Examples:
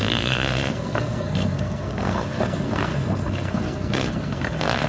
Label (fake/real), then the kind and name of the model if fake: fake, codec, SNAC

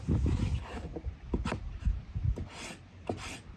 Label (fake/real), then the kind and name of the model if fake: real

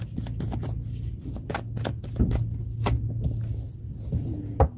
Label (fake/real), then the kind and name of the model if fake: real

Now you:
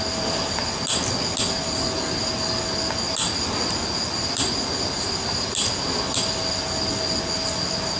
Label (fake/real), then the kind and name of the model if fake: real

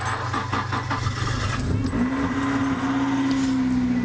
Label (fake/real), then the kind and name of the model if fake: real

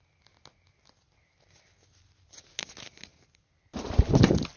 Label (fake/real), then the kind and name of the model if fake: real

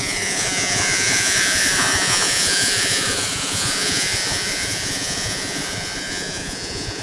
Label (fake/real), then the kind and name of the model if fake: fake, vocoder, Vocos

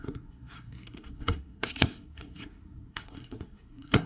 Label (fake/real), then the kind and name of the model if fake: fake, codec, SNAC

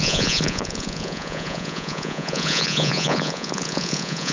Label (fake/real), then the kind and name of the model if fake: fake, vocoder, Vocos